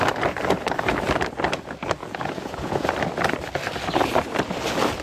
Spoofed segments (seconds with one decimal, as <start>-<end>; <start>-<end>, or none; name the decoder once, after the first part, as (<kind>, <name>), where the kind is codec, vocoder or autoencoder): 2.0-2.9 (vocoder, Vocos)

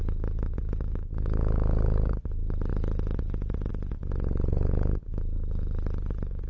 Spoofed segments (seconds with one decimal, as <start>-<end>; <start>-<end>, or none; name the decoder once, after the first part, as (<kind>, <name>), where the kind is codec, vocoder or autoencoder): none

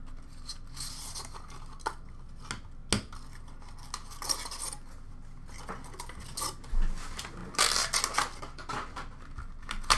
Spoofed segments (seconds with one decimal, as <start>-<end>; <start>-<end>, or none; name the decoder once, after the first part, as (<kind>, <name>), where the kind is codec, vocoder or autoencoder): none